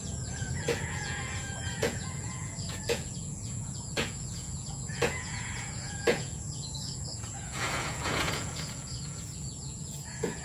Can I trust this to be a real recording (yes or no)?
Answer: no